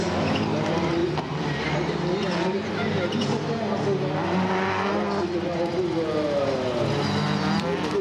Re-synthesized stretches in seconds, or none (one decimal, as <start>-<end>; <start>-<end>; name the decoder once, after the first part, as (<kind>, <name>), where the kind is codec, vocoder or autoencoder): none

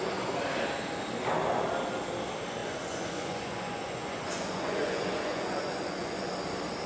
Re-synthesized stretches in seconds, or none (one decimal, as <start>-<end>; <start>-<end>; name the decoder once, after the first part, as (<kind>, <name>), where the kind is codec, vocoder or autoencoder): 2.6-6.3 (vocoder, Vocos)

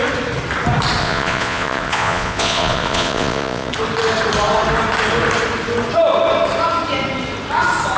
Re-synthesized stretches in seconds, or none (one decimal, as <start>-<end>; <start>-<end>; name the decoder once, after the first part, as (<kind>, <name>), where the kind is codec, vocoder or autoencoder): 1.0-3.7 (vocoder, Vocos)

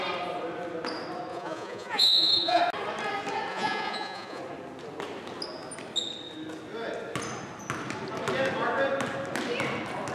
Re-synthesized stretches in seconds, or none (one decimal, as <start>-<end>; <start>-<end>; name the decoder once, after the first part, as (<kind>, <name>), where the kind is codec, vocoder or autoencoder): 1.3-2.6 (vocoder, Vocos); 3.5-4.4

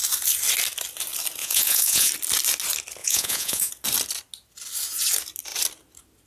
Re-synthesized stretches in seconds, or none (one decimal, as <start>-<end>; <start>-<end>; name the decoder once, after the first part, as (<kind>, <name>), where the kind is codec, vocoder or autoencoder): 1.4-2.1 (vocoder, Vocos); 3.0-3.7